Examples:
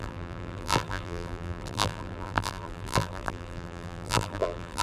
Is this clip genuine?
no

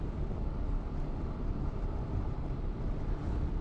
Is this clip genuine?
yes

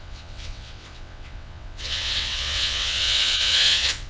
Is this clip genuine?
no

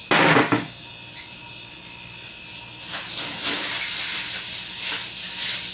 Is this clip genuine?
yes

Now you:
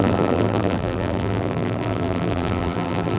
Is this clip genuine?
no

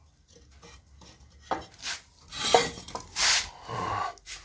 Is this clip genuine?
yes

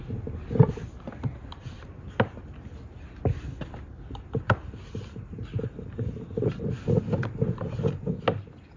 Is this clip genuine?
yes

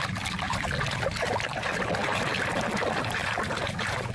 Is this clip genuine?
yes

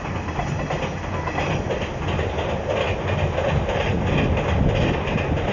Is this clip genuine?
yes